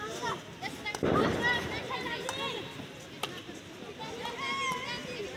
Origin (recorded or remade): recorded